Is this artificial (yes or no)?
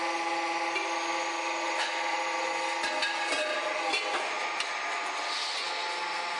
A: no